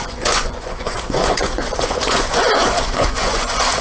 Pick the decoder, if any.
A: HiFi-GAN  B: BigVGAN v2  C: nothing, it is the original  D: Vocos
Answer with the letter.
D